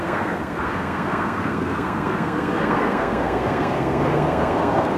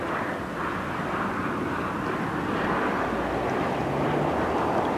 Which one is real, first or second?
second